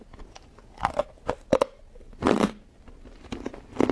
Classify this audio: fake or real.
real